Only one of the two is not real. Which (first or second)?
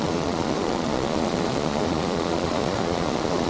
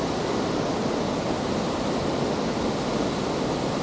first